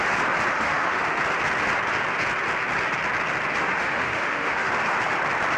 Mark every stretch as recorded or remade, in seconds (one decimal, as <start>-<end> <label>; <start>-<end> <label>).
0.0-0.5 recorded; 0.5-1.2 remade; 1.2-3.6 recorded; 3.6-4.7 remade; 4.7-5.6 recorded